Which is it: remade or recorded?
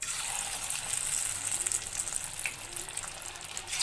recorded